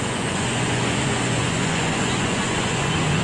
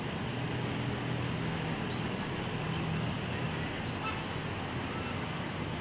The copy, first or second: first